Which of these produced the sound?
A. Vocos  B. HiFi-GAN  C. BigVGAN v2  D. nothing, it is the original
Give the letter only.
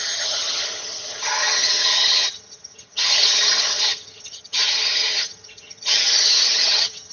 B